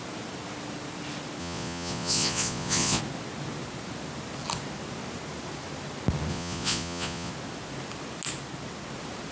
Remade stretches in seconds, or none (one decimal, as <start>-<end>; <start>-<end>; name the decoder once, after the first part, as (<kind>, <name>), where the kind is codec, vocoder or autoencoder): 1.4-3.0 (vocoder, Vocos); 6.3-7.3